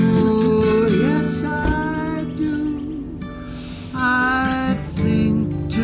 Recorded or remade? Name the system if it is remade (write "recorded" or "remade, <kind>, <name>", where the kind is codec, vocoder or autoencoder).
recorded